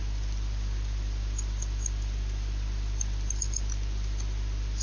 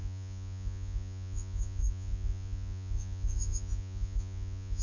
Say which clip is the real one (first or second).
first